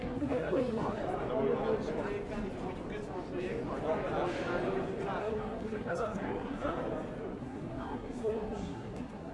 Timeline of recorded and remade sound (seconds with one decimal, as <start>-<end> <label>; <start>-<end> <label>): 0.0-1.0 remade; 1.0-5.2 recorded; 5.2-6.8 remade; 6.8-7.4 recorded; 7.4-9.3 remade